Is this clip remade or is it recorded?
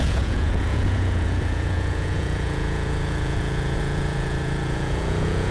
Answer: remade